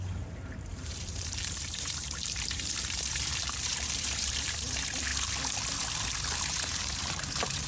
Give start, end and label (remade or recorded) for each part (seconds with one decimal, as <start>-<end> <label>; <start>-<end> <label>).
0.0-5.1 remade; 5.1-6.4 recorded; 6.4-7.7 remade